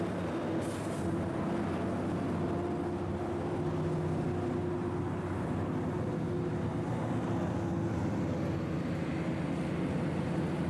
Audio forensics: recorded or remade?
recorded